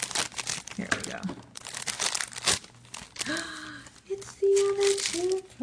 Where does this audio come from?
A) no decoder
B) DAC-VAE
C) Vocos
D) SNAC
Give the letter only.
A